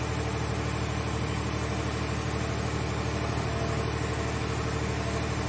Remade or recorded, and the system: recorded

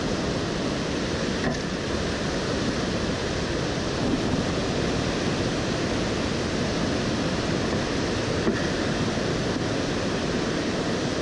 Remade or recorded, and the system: recorded